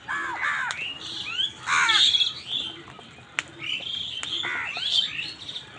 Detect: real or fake real